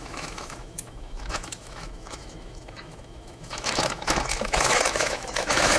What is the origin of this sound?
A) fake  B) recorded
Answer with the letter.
A